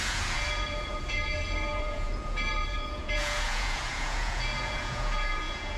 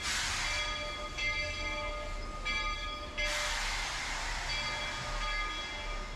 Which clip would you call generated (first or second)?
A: first